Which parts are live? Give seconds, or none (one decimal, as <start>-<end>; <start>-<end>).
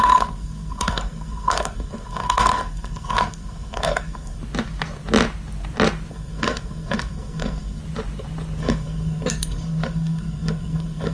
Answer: 4.4-6.1; 7.8-8.6